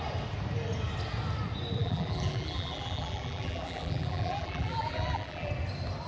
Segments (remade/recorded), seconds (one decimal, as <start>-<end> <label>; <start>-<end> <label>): 0.0-1.8 recorded; 1.8-5.5 remade; 5.5-6.1 recorded